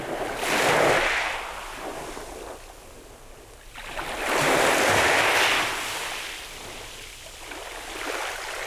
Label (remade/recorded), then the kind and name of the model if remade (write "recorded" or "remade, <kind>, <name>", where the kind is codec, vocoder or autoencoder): recorded